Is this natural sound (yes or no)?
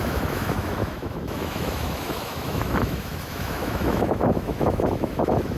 no